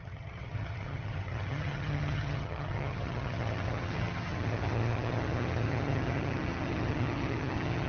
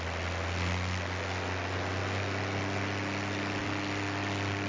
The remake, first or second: first